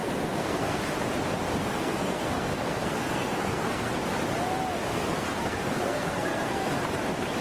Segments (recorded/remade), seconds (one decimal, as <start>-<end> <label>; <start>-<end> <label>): 0.0-0.8 remade; 0.8-1.6 recorded; 1.6-4.0 remade; 4.0-4.9 recorded; 4.9-6.7 remade; 6.7-7.4 recorded